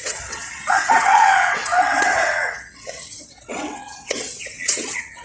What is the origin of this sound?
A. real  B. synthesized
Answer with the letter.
B